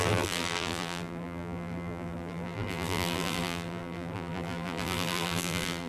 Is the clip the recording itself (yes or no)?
no